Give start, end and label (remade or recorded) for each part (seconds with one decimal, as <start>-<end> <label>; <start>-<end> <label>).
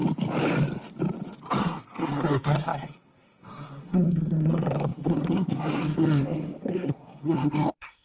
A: 0.0-1.6 recorded; 1.6-8.0 remade